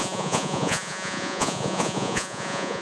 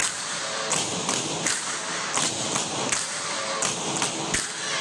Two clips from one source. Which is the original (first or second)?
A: second